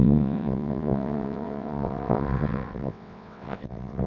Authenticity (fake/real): fake